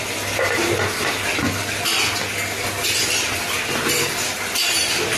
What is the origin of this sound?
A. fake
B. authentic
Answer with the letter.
B